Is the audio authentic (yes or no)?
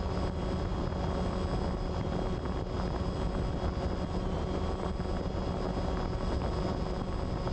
yes